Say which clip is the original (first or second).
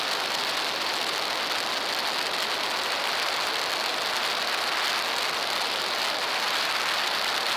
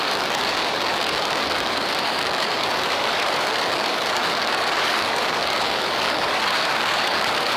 first